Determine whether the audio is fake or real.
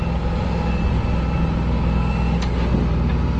real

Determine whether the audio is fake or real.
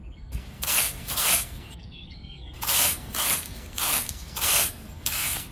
fake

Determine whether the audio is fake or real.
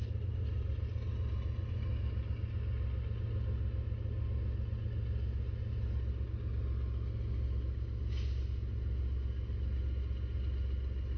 real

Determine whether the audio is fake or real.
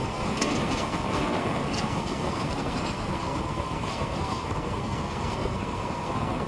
fake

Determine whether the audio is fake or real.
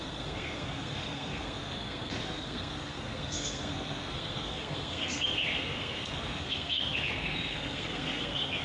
fake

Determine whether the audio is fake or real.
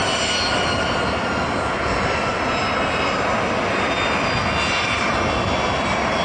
real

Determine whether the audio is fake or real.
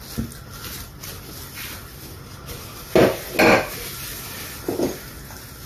real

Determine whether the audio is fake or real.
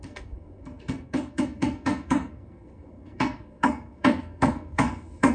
fake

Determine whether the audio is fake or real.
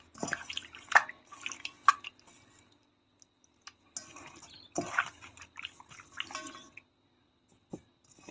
real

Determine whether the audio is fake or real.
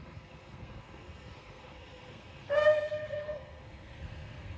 fake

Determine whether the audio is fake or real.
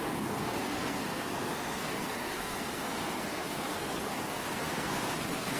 fake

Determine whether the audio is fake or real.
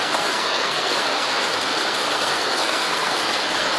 fake